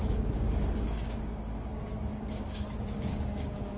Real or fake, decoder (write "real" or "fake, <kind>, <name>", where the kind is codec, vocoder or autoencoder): fake, codec, DAC